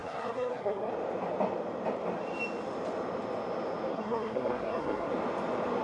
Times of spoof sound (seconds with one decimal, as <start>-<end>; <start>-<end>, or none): 0.0-0.9; 3.9-5.1